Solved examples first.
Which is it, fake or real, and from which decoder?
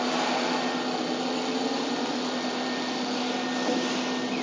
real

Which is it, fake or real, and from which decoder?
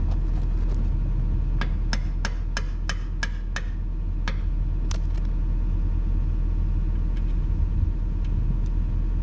real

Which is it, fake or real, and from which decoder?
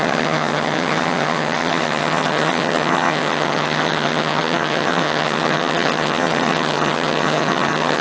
fake, vocoder, HiFi-GAN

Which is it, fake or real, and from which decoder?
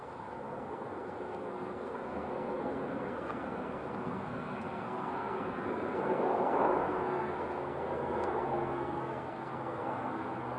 fake, codec, SNAC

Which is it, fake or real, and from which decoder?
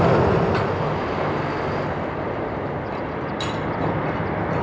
real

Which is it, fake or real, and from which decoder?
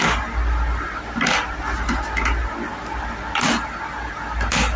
real